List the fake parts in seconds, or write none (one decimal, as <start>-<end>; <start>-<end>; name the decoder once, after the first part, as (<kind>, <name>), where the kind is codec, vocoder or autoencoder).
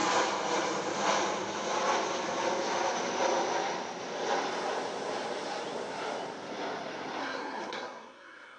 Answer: 7.2-8.6 (codec, SNAC)